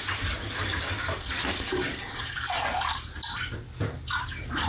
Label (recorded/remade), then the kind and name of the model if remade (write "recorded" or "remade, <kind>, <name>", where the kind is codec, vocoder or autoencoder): recorded